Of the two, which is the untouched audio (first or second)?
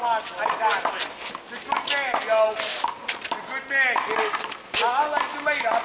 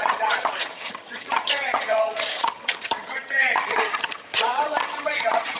first